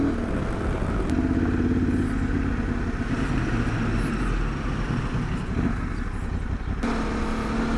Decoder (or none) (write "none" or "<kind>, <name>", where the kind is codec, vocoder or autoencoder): none